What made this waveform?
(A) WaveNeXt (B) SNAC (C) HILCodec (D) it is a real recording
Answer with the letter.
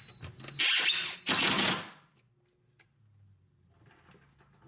D